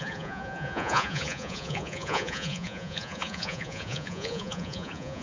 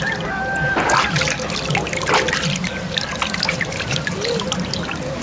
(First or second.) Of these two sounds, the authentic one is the second